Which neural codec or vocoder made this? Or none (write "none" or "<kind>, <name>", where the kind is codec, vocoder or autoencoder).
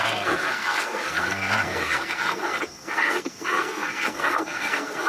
codec, SNAC